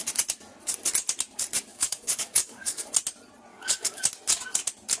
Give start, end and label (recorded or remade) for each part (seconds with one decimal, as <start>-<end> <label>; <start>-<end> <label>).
0.0-1.7 recorded; 1.7-2.9 remade; 2.9-3.5 recorded; 3.5-4.0 remade; 4.0-5.0 recorded